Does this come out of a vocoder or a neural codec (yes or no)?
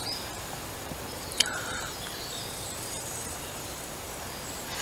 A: yes